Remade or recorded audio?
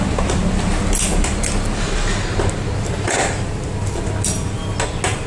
recorded